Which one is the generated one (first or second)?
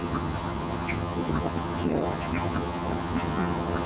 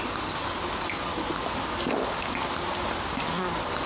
first